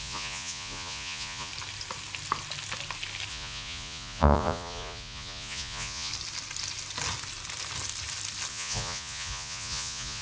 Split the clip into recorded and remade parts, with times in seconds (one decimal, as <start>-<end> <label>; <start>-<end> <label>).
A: 0.0-1.5 remade; 1.5-3.3 recorded; 3.3-6.1 remade; 6.1-8.5 recorded; 8.5-10.2 remade